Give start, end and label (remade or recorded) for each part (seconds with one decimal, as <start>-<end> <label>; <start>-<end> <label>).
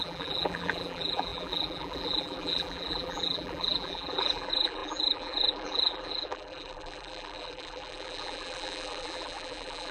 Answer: 0.0-9.9 remade